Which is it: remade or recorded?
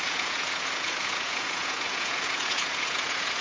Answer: remade